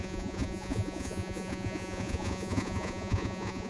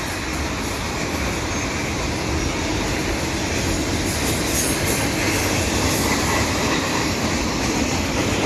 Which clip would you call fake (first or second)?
first